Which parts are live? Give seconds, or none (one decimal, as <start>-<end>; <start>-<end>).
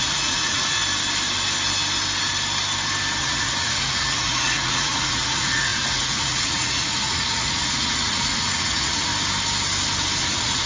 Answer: 0.8-3.2; 9.1-10.2